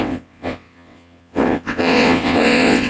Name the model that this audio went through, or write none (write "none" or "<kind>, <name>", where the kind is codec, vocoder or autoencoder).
vocoder, WaveNeXt